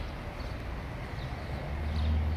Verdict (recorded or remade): recorded